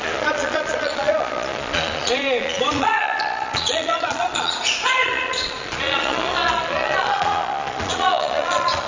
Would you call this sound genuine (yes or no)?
no